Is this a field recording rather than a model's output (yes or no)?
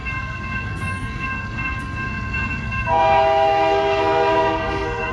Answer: no